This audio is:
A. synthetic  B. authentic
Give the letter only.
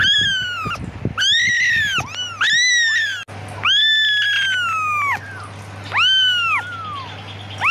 B